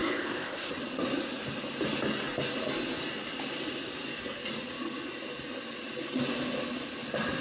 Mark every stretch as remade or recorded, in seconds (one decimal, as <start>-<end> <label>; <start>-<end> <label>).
0.0-0.7 remade; 0.7-7.4 recorded